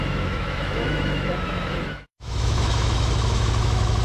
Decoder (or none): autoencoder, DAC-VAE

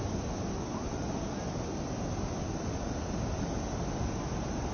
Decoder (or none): none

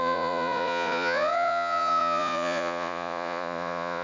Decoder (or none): vocoder, Vocos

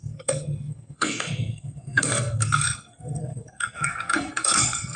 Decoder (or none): codec, SNAC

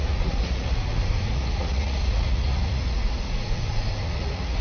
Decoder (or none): vocoder, Vocos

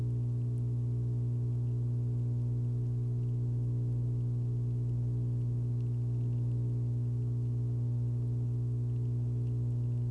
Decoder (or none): none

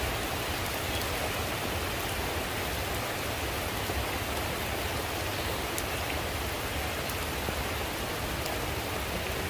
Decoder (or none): none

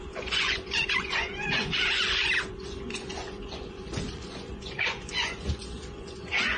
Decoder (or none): vocoder, Vocos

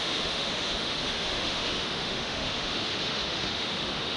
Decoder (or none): autoencoder, DAC-VAE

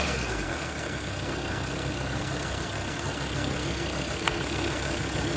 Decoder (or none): codec, SNAC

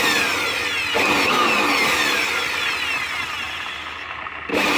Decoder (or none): none